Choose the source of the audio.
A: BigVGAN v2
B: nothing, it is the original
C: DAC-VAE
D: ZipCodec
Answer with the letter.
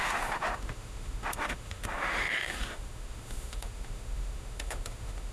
C